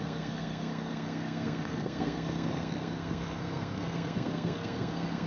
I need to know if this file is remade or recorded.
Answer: remade